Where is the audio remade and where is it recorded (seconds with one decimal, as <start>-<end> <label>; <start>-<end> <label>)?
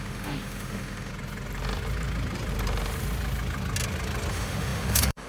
0.0-1.1 remade; 1.1-4.3 recorded; 4.3-5.3 remade